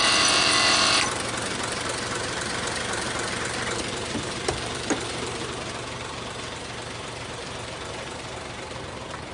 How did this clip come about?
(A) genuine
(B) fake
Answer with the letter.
B